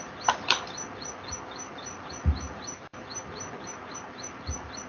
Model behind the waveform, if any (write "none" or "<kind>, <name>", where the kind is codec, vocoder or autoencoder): none